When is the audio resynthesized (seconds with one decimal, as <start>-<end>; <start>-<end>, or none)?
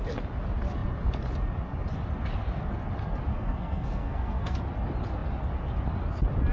3.3-4.6